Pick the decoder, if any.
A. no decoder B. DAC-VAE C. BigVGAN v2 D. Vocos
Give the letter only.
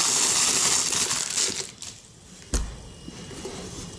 A